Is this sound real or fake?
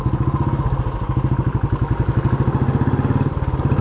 real